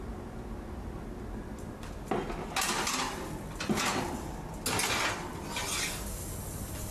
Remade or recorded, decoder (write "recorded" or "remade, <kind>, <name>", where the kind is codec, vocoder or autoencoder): recorded